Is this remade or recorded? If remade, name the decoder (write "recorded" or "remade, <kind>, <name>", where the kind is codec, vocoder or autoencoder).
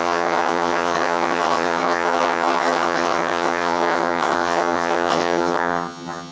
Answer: remade, vocoder, HiFi-GAN